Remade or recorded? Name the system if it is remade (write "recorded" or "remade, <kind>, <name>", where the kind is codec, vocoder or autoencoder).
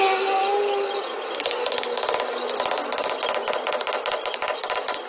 recorded